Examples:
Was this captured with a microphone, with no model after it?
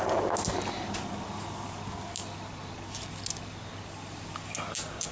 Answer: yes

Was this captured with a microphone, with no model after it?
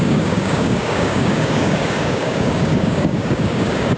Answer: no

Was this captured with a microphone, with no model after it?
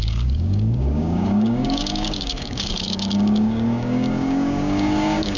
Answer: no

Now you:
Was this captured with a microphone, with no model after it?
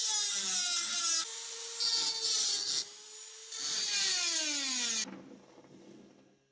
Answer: yes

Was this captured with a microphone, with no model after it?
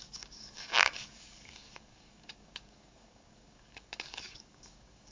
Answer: no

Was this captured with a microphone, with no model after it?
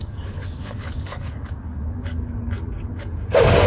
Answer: no